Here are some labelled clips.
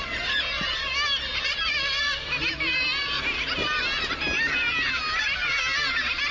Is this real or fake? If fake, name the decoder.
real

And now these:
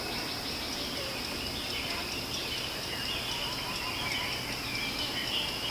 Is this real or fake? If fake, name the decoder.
real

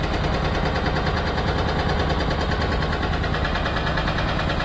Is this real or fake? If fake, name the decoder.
real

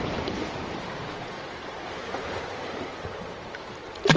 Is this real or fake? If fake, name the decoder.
fake, vocoder, BigVGAN v2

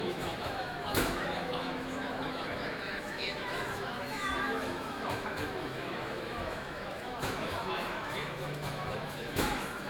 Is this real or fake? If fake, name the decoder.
fake, autoencoder, DAC-VAE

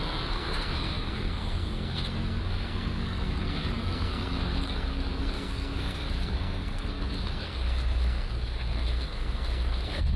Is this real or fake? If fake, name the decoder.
fake, codec, SNAC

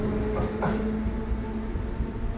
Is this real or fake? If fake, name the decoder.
real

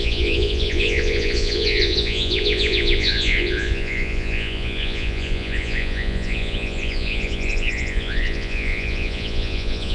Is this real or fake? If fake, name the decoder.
fake, vocoder, Vocos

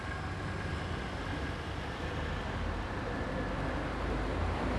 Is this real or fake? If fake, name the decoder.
real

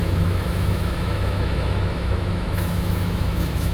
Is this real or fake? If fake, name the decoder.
fake, autoencoder, DAC-VAE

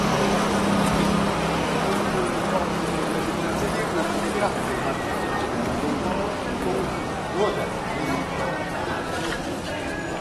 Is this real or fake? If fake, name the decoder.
real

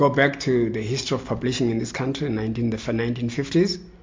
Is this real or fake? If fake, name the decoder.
real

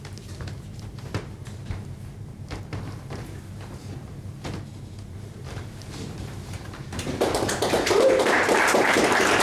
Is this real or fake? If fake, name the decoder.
fake, vocoder, BigVGAN v2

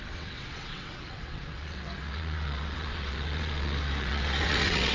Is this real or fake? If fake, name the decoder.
fake, vocoder, WaveNeXt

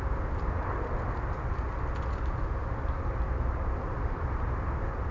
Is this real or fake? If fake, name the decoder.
real